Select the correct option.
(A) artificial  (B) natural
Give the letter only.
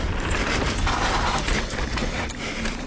B